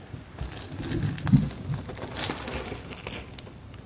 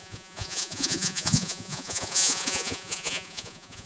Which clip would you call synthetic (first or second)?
second